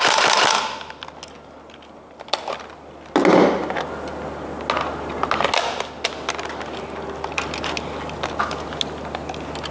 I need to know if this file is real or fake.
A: real